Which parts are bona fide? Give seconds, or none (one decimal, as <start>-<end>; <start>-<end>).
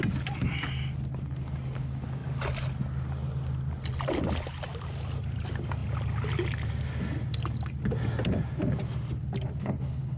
0.0-9.6